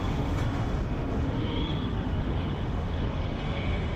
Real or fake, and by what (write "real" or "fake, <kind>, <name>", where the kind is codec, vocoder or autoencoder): fake, autoencoder, DAC-VAE